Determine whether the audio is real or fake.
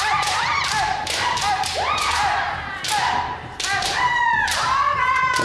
fake